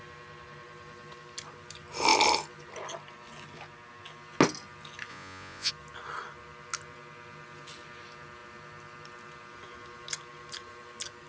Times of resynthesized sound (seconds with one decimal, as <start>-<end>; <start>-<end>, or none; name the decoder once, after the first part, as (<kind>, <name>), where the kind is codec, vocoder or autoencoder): 5.1-5.7 (vocoder, Vocos)